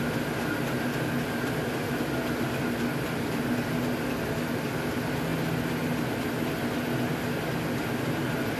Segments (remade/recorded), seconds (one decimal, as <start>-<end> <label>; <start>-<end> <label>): 0.0-8.6 recorded